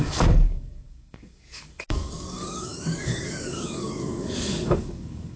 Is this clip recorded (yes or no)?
no